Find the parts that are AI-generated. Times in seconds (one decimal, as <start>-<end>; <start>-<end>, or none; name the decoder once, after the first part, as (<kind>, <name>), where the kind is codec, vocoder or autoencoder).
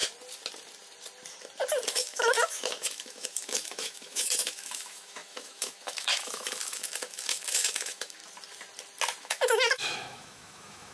1.9-8.2 (autoencoder, DAC-VAE); 9.2-10.9